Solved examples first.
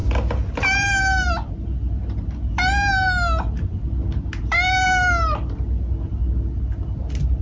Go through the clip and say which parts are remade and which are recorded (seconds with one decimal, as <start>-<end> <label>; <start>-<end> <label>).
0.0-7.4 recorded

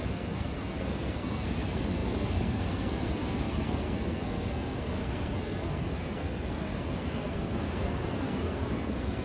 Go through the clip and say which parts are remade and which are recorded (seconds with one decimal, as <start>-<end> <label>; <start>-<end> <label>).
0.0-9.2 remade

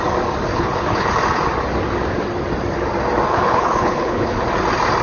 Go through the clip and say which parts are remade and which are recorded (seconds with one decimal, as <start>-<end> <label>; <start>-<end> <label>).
0.0-0.5 recorded; 0.5-1.1 remade; 1.1-3.3 recorded; 3.3-4.4 remade; 4.4-5.0 recorded

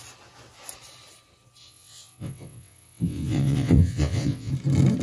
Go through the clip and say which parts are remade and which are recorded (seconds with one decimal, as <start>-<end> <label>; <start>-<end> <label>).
0.0-1.6 recorded; 1.6-4.5 remade; 4.5-5.0 recorded

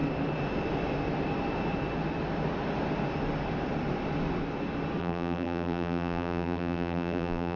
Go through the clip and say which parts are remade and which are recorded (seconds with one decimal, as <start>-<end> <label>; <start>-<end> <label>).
0.0-5.0 recorded; 5.0-7.6 remade